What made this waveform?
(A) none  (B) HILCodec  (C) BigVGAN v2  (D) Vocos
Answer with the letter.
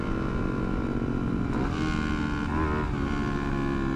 A